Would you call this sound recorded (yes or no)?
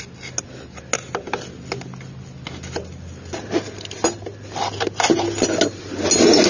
yes